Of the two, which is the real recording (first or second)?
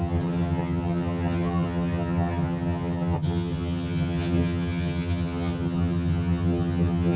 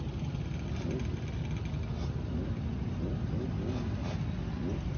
second